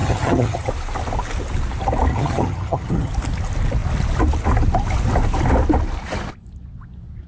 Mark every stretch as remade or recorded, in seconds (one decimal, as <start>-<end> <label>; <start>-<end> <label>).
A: 0.0-0.7 remade; 0.7-2.1 recorded; 2.1-3.1 remade; 3.1-7.3 recorded